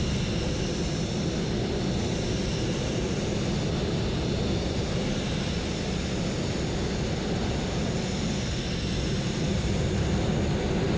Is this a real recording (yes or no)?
yes